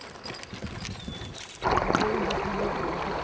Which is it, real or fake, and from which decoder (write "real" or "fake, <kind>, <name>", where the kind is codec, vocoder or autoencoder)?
real